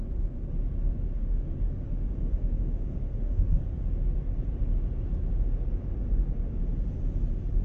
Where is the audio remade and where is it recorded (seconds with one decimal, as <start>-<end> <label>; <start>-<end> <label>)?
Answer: 0.0-1.2 recorded; 1.2-3.6 remade; 3.6-7.6 recorded